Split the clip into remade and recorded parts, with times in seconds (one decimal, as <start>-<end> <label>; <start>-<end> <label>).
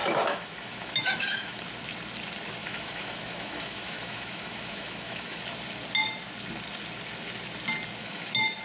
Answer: 0.0-1.6 remade; 1.6-2.6 recorded; 2.6-5.4 remade; 5.4-8.0 recorded; 8.0-8.6 remade